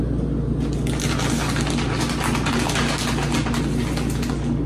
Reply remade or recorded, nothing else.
recorded